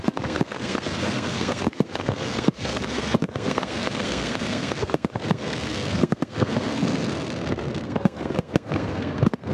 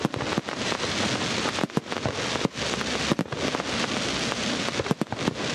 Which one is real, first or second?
second